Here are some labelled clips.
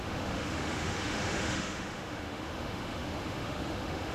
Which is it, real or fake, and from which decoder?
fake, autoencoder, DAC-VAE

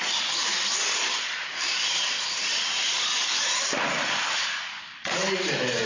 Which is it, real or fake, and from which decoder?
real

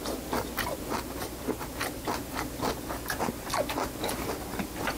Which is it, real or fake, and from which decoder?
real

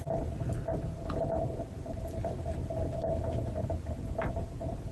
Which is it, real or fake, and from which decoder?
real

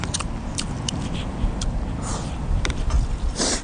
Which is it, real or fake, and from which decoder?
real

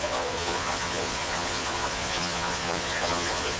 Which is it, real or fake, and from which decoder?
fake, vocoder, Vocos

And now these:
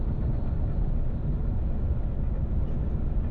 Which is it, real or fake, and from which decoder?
real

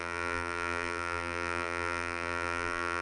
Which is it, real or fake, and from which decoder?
fake, vocoder, BigVGAN v2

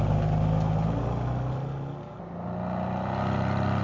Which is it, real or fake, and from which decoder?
real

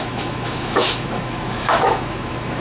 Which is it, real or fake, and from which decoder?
fake, autoencoder, DAC-VAE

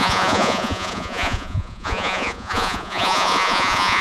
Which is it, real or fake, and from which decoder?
fake, vocoder, Vocos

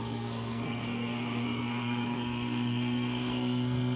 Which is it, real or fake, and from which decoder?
fake, codec, SNAC